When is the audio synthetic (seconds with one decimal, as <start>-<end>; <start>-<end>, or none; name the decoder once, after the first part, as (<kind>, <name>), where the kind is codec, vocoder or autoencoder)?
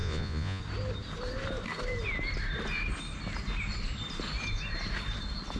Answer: 0.0-0.6 (vocoder, Vocos)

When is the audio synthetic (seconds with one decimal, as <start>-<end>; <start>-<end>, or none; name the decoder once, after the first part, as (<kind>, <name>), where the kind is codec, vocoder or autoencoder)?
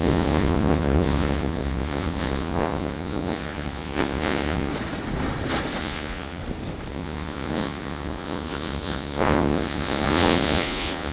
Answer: 0.0-4.7 (vocoder, Vocos); 5.8-6.4; 6.9-11.1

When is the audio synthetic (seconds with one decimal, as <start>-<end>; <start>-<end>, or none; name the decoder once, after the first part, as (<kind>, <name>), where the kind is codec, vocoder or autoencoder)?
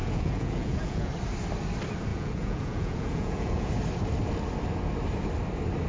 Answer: 0.0-1.1 (vocoder, Vocos); 2.1-3.7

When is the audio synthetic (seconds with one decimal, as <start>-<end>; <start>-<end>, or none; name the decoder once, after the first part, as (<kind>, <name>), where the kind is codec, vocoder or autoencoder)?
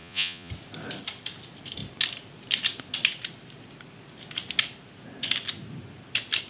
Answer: 0.0-0.5 (vocoder, Vocos)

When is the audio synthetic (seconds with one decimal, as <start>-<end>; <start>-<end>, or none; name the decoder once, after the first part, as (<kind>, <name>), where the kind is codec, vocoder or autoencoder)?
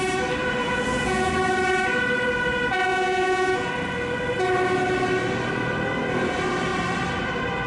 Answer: 0.6-1.3 (vocoder, Vocos); 2.9-3.7